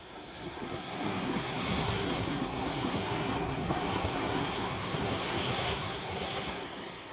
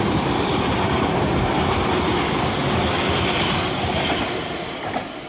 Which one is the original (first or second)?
second